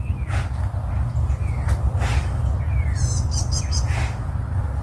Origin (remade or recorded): recorded